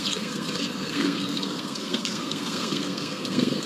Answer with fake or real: fake